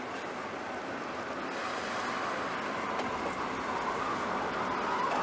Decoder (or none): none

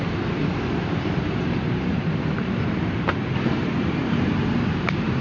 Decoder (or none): vocoder, BigVGAN v2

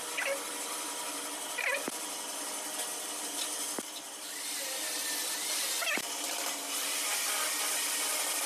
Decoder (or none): none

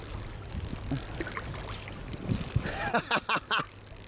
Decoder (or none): none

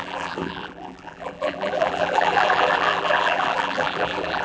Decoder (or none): vocoder, BigVGAN v2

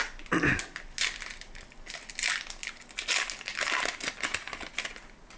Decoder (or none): none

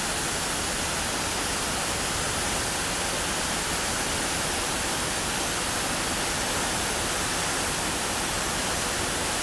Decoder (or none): none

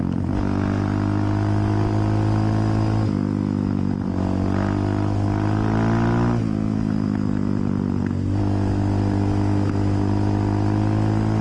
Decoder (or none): none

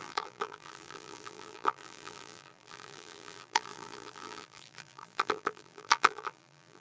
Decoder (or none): vocoder, BigVGAN v2